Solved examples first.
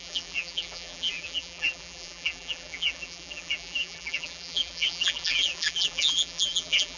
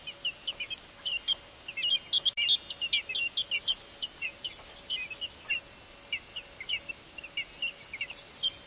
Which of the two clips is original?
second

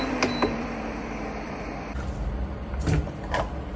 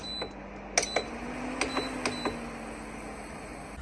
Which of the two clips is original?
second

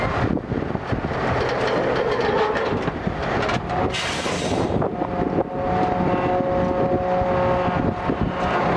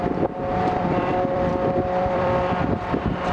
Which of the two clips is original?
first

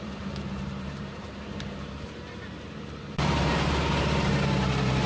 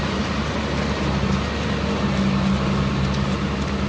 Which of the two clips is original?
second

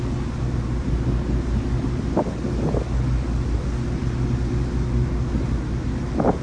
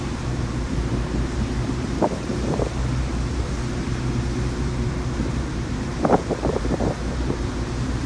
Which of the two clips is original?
first